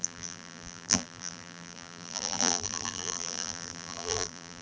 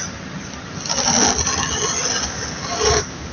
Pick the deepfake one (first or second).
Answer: first